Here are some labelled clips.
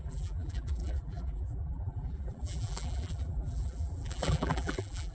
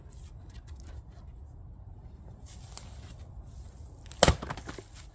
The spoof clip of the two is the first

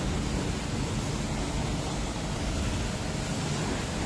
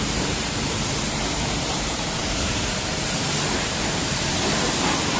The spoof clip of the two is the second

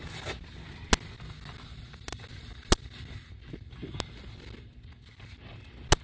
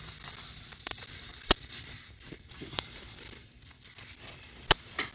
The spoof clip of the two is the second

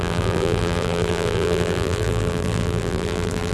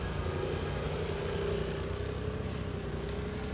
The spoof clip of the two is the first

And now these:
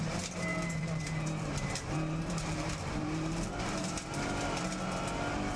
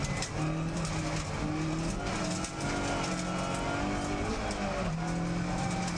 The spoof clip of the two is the first